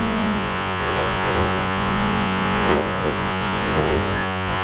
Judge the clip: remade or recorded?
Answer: remade